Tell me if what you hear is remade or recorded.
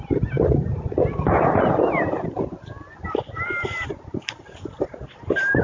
recorded